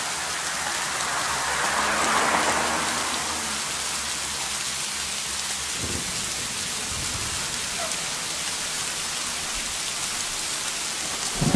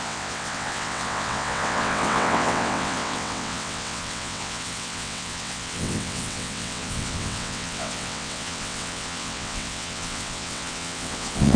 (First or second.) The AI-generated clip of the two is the second